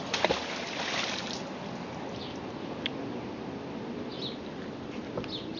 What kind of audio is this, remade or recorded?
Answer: recorded